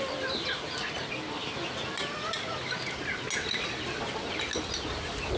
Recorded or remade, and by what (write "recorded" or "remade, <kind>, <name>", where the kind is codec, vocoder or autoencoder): recorded